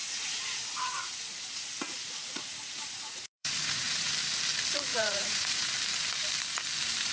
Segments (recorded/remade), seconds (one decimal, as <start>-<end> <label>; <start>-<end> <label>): 0.0-1.3 remade; 1.3-2.0 recorded; 2.0-4.1 remade; 4.1-4.9 recorded; 4.9-5.7 remade; 5.7-7.1 recorded